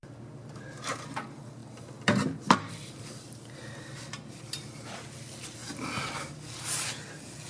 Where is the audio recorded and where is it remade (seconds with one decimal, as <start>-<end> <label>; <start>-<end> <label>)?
0.0-5.6 remade; 5.6-7.5 recorded